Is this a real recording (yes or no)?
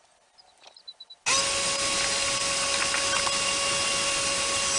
yes